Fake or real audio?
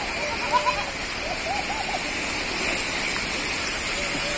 real